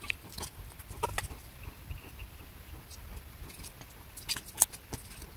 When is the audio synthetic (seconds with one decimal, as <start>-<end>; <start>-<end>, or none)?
none